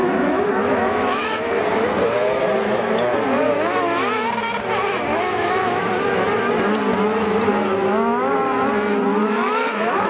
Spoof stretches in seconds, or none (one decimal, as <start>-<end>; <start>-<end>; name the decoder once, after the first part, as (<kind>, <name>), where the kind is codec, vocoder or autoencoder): 0.0-1.5 (autoencoder, DAC-VAE); 5.1-5.9; 9.1-10.1